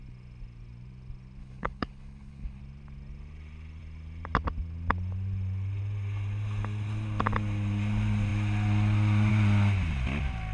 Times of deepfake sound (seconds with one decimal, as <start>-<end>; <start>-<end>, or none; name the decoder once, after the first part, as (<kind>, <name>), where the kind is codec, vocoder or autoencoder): 1.4-2.6 (codec, HILCodec)